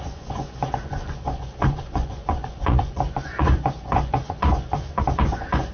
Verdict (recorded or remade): remade